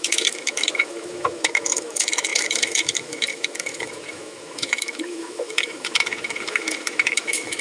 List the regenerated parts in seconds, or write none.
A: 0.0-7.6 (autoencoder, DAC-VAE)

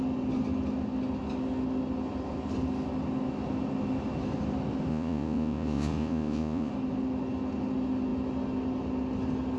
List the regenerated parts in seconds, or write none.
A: 4.9-6.7 (vocoder, Vocos)